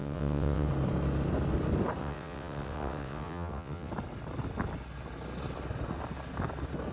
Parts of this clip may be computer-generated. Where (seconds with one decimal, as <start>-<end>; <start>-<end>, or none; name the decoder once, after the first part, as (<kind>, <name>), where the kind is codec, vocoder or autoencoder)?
0.0-0.7 (vocoder, WaveNeXt); 2.0-3.9